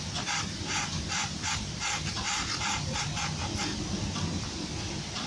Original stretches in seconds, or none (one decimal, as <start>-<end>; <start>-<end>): 0.9-4.1